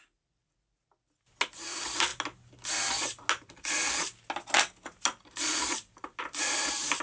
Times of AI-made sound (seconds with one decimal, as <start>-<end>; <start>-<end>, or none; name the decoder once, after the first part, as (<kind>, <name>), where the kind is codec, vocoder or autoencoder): none